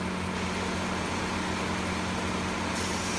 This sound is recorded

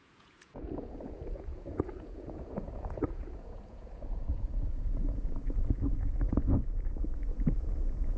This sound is remade